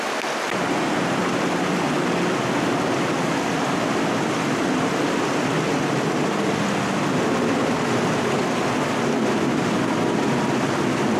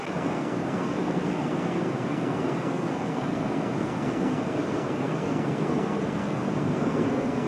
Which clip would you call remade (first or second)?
second